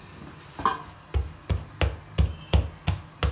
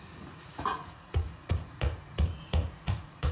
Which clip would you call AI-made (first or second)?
second